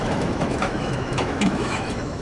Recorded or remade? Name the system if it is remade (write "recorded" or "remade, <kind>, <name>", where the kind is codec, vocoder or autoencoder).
remade, autoencoder, DAC-VAE